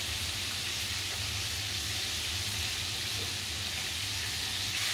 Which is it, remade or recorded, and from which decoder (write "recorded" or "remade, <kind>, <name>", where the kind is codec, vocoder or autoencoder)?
recorded